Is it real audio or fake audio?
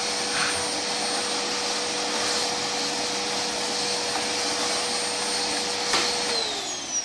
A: real